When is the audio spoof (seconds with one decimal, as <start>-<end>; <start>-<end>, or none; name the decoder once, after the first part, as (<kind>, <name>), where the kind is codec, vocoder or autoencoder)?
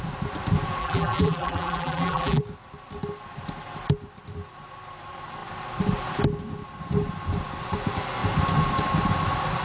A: 0.8-2.4 (vocoder, BigVGAN v2)